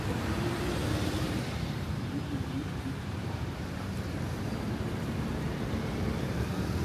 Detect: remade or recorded remade